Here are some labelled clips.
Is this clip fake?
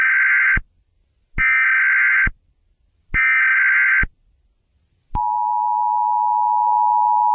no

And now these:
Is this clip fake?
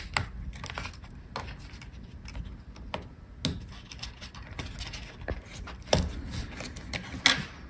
no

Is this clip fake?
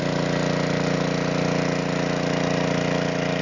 no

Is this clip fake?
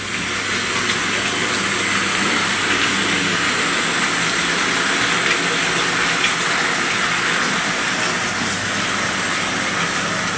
no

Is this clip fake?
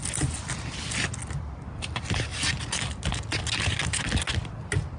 no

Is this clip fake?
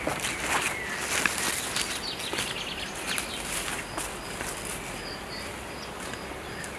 no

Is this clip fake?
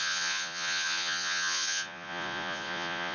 yes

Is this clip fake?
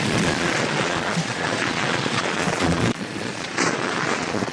yes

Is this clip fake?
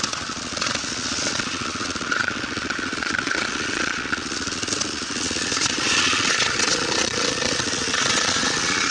yes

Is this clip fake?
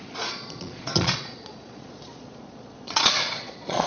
yes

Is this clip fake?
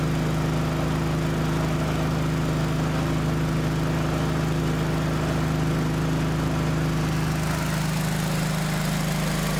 no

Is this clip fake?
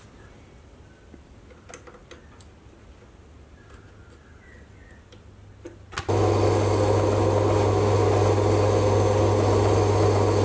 no